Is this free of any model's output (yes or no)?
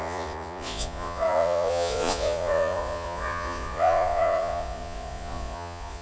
no